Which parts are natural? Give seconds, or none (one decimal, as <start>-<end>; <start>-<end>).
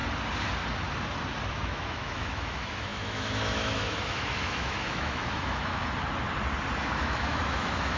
0.0-1.5; 5.8-6.8